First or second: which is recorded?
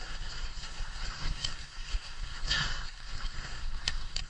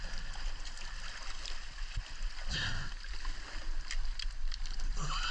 second